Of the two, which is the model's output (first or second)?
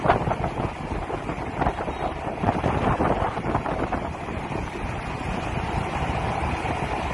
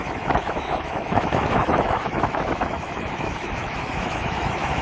second